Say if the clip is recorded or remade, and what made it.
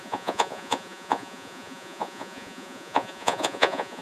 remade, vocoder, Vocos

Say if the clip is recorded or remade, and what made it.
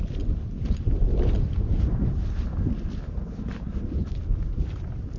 recorded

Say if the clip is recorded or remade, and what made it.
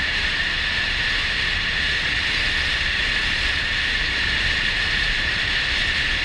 remade, vocoder, BigVGAN v2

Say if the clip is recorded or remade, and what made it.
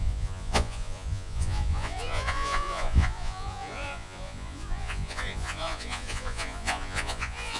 remade, vocoder, Vocos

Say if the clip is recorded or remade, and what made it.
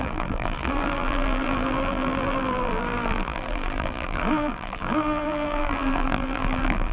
remade, vocoder, BigVGAN v2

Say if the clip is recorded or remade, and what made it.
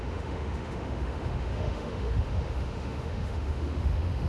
remade, autoencoder, DAC-VAE